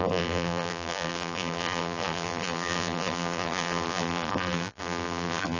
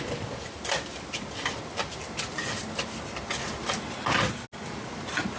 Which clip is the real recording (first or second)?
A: second